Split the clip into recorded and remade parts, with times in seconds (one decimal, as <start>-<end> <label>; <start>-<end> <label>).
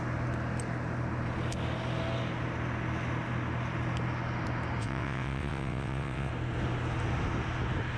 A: 0.0-4.8 recorded; 4.8-6.3 remade; 6.3-8.0 recorded